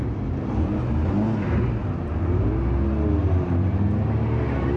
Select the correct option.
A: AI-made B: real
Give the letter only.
B